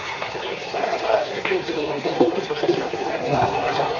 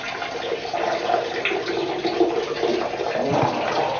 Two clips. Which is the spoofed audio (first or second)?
first